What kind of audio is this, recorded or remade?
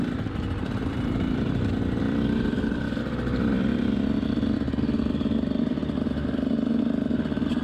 remade